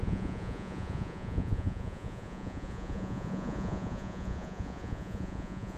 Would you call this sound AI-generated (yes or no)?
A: yes